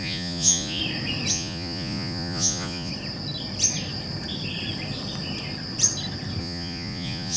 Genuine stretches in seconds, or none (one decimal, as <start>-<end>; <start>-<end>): 0.8-1.3; 2.9-6.4